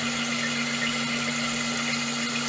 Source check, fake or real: real